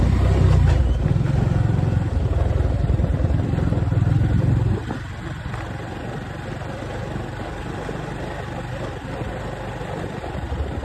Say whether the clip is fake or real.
real